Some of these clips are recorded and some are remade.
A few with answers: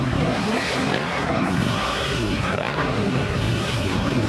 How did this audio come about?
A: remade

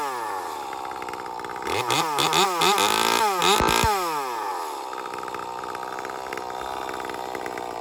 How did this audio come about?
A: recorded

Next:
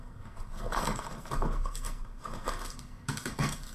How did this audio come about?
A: remade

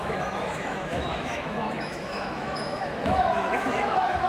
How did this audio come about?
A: remade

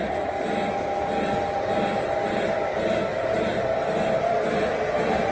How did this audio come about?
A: recorded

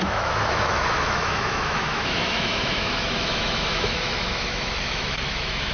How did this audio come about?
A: remade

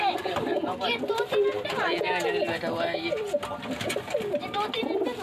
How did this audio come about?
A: recorded